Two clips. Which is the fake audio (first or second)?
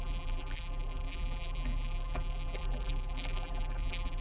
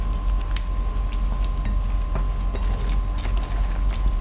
first